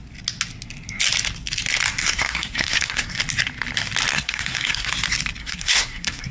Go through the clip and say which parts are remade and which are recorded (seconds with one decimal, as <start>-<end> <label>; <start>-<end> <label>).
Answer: 0.0-2.0 recorded; 2.0-3.2 remade; 3.2-4.1 recorded; 4.1-4.9 remade; 4.9-5.4 recorded; 5.4-6.3 remade